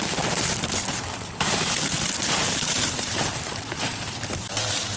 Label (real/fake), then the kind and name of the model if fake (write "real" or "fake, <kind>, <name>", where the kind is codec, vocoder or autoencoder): fake, vocoder, BigVGAN v2